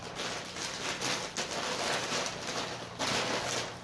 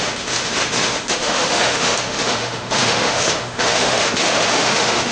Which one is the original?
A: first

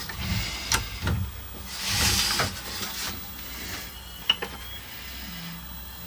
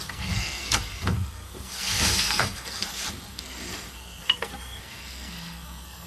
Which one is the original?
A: first